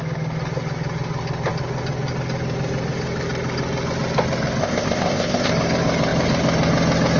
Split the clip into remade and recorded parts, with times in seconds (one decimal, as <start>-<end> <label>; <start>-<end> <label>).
0.0-4.6 recorded; 4.6-5.5 remade; 5.5-7.2 recorded